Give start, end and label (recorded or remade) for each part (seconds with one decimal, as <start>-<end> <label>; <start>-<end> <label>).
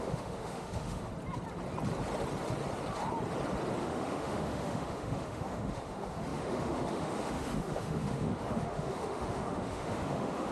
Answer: 0.0-1.1 remade; 1.1-3.8 recorded; 3.8-10.5 remade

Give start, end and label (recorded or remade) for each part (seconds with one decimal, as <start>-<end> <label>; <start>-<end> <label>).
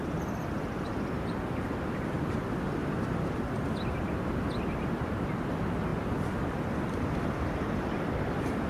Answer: 0.0-2.8 recorded; 2.8-5.4 remade; 5.4-5.9 recorded; 5.9-8.7 remade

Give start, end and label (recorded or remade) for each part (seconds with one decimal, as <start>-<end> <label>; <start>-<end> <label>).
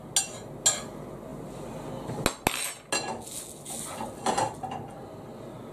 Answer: 0.0-5.7 recorded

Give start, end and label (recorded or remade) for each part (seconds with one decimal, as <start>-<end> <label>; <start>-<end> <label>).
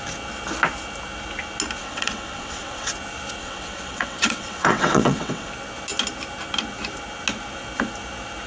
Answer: 0.0-1.8 recorded; 1.8-2.9 remade; 2.9-3.4 recorded; 3.4-5.5 remade; 5.5-8.5 recorded